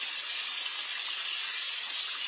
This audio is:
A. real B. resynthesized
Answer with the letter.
A